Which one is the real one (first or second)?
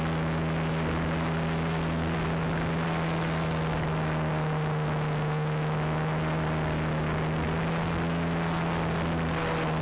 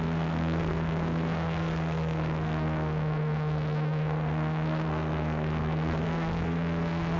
first